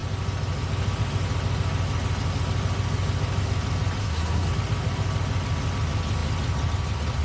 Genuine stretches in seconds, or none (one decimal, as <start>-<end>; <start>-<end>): 0.0-4.0; 4.5-7.2